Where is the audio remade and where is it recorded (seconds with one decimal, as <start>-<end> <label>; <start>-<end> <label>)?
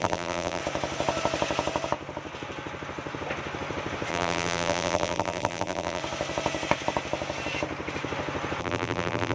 0.0-0.6 remade; 0.6-4.1 recorded; 4.1-6.0 remade; 6.0-8.6 recorded; 8.6-9.3 remade